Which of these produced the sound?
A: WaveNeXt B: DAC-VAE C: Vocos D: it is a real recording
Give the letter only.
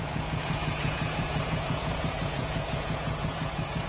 C